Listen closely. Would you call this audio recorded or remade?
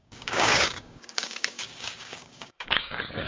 remade